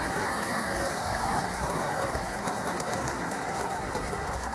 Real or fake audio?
fake